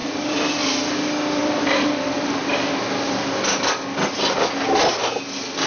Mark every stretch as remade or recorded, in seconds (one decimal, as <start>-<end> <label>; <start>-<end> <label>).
0.0-0.6 remade; 0.6-1.4 recorded; 1.4-2.4 remade; 2.4-5.7 recorded